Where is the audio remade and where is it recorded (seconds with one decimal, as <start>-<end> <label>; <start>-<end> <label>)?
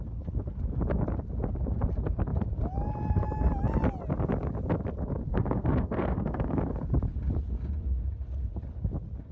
0.0-5.3 recorded; 5.3-6.6 remade; 6.6-9.3 recorded